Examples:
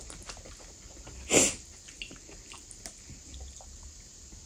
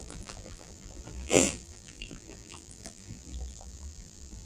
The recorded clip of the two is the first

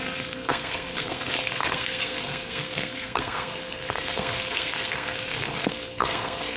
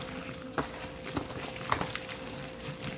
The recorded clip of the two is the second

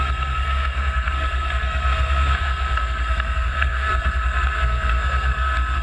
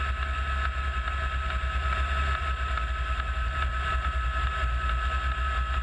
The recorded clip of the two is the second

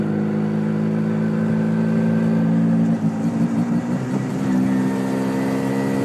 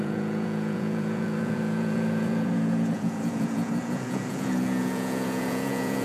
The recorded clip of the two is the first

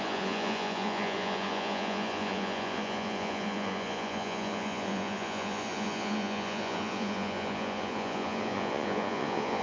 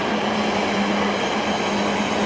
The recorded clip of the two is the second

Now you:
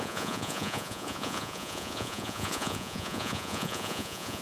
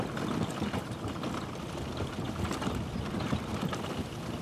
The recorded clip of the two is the second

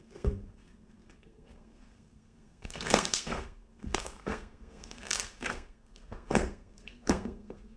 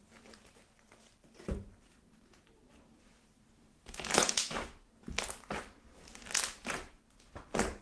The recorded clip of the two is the second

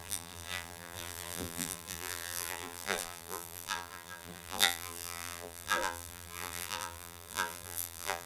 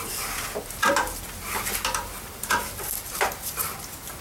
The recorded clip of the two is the second